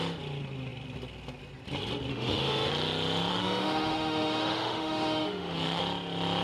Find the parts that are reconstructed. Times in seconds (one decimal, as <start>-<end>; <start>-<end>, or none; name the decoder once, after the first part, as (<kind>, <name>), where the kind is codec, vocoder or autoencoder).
2.1-2.7 (autoencoder, DAC-VAE); 3.3-5.8